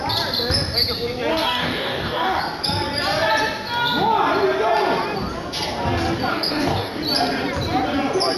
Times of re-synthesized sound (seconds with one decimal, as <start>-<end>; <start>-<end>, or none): 1.3-2.4; 6.3-7.0